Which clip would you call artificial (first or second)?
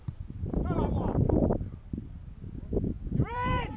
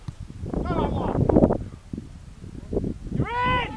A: first